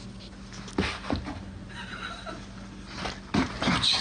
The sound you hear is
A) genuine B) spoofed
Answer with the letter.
A